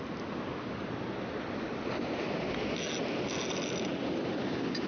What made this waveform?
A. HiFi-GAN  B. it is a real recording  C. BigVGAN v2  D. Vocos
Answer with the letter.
B